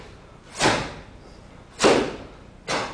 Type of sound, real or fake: real